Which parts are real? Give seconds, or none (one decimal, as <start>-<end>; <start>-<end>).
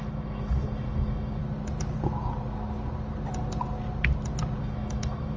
1.4-4.6